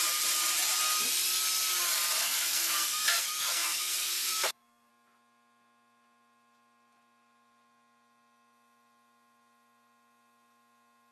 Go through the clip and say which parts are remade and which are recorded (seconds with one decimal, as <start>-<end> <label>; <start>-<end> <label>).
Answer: 0.0-2.2 recorded; 2.2-4.9 remade; 4.9-11.1 recorded